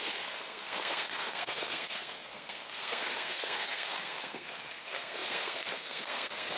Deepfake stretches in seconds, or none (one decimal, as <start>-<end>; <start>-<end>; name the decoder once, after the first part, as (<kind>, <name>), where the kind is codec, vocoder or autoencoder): 0.0-6.6 (codec, SNAC)